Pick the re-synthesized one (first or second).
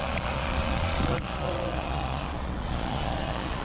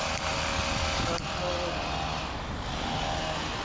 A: first